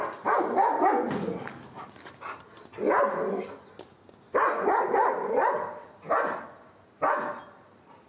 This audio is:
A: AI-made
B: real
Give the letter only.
B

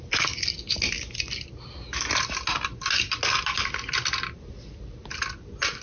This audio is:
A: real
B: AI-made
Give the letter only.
A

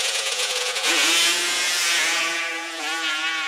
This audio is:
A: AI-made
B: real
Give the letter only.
A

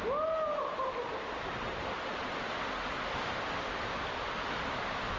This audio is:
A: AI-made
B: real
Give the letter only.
B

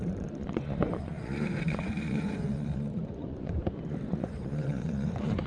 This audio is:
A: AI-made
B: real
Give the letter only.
A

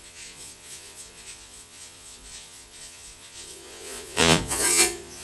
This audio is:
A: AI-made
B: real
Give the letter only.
A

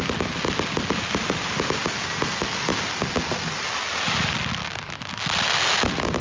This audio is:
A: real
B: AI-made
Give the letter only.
A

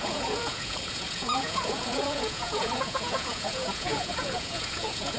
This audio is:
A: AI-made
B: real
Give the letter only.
A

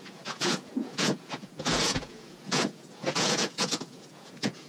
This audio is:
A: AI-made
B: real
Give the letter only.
A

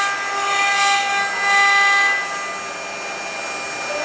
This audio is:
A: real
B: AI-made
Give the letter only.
A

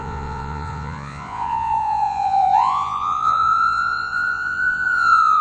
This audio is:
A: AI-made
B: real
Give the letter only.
A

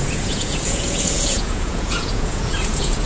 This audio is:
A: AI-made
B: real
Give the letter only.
A